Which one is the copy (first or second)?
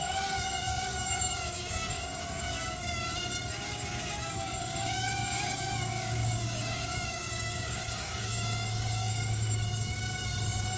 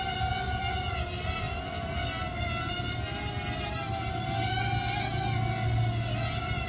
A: first